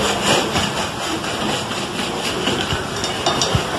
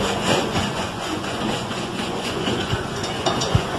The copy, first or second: second